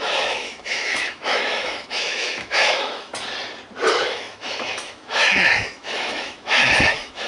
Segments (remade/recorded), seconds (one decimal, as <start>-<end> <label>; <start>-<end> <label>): 0.0-3.1 remade; 3.1-3.9 recorded; 3.9-7.3 remade